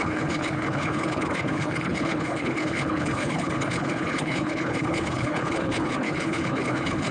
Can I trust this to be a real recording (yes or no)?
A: no